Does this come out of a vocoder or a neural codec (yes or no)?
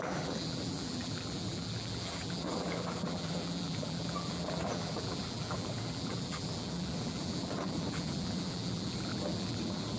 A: yes